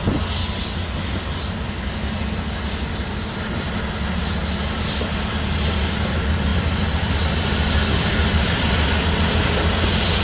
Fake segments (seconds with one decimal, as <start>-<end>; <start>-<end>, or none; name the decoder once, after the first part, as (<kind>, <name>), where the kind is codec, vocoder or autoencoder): none